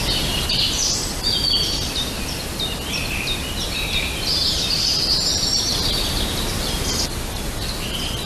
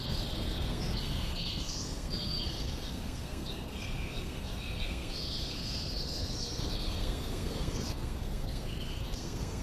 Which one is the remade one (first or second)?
second